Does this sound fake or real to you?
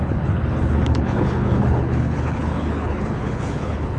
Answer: fake